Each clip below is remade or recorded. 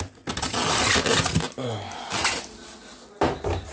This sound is recorded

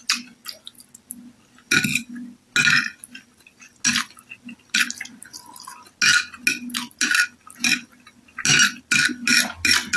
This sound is recorded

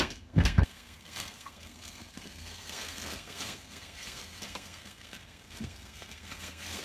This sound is remade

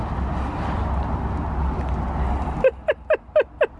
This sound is recorded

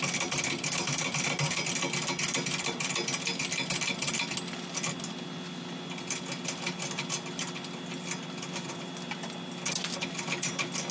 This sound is recorded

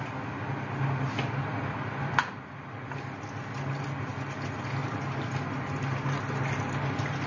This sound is recorded